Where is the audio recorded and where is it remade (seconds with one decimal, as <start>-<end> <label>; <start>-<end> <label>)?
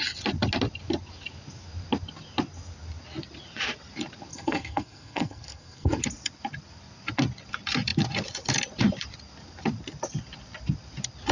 0.0-4.3 recorded; 4.3-6.0 remade; 6.0-11.3 recorded